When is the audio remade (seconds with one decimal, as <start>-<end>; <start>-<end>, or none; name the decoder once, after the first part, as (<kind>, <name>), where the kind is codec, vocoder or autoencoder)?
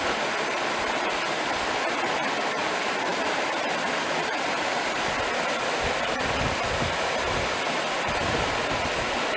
none